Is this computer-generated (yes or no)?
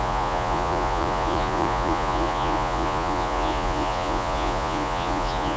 yes